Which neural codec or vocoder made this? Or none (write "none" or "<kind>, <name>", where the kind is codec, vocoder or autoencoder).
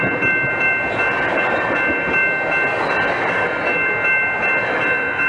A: none